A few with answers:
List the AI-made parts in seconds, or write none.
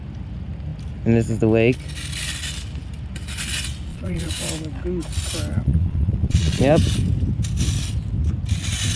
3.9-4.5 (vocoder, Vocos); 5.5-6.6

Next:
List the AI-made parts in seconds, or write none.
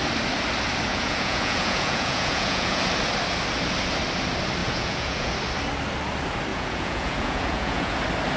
0.9-2.8 (vocoder, Vocos); 4.6-5.3; 6.5-8.0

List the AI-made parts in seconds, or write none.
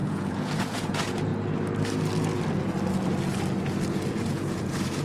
0.0-1.3 (vocoder, Vocos); 4.3-5.0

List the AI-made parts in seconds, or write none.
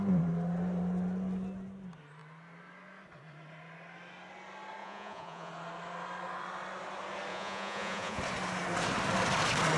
4.8-5.5 (vocoder, Vocos); 7.3-8.2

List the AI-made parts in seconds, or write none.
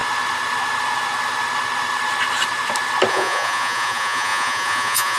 3.1-5.2 (vocoder, Vocos)